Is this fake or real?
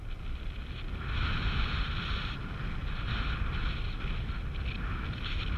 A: real